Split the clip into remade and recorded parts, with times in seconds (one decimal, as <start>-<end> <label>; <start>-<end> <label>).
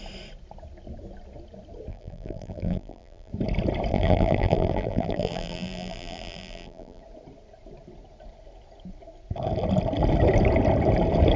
0.0-1.9 recorded; 1.9-3.3 remade; 3.3-3.9 recorded; 3.9-7.0 remade; 7.0-11.4 recorded